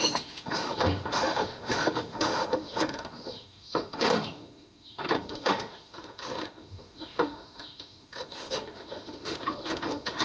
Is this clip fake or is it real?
fake